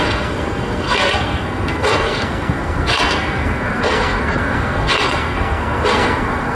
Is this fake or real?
fake